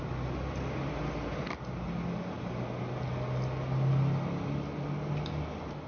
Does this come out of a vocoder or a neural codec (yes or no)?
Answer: no